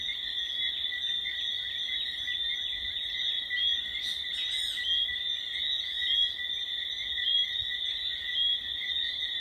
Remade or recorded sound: recorded